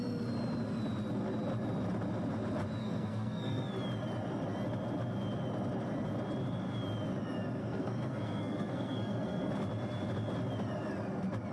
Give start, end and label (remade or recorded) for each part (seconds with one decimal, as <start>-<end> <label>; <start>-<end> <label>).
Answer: 0.0-2.8 recorded; 2.8-3.7 remade; 3.7-7.6 recorded; 7.6-9.5 remade; 9.5-11.5 recorded